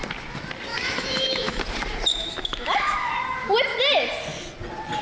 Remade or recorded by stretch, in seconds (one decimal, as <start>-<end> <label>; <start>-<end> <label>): 0.0-0.7 recorded; 0.7-1.6 remade; 1.6-2.1 recorded; 2.1-3.1 remade; 3.1-5.0 recorded